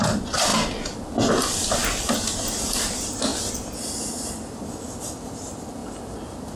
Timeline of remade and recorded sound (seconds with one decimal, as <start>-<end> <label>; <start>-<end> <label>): 0.0-6.6 recorded